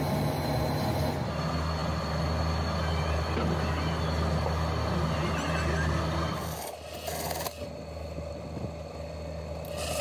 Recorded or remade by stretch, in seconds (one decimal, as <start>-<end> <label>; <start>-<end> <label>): 0.0-10.0 recorded